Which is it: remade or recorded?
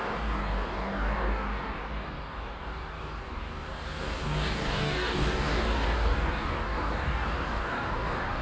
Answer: remade